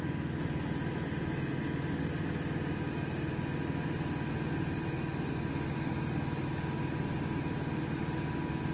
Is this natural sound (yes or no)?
yes